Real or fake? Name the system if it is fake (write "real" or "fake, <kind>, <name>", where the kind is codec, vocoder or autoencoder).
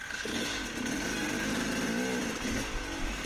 real